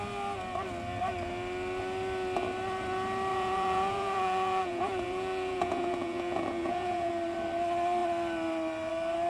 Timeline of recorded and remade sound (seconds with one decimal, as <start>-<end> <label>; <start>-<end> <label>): 0.0-3.3 recorded; 3.3-7.1 remade; 7.1-9.3 recorded